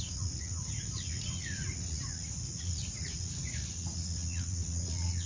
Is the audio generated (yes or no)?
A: yes